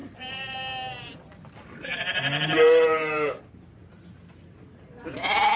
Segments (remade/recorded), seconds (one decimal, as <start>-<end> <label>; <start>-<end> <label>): 0.0-3.4 remade; 3.4-5.6 recorded